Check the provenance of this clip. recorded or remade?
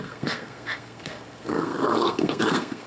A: remade